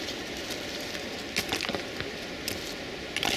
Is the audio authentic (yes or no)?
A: yes